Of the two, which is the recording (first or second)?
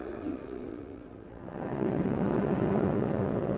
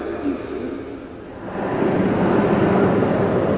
second